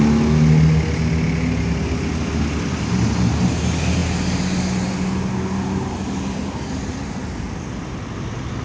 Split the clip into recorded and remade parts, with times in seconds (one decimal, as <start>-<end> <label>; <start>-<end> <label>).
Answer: 0.0-8.6 recorded